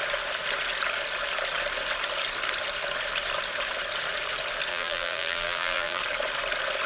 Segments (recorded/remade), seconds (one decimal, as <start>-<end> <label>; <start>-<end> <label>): 0.0-4.7 recorded; 4.7-6.0 remade; 6.0-6.9 recorded